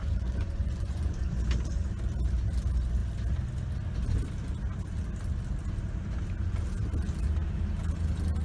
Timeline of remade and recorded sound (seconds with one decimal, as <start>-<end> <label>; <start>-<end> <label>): 0.0-1.4 remade; 1.4-8.4 recorded